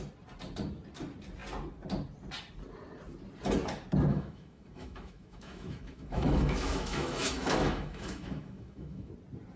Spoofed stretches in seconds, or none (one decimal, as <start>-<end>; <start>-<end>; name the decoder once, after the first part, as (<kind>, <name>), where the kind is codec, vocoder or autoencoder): 4.1-9.1 (autoencoder, DAC-VAE)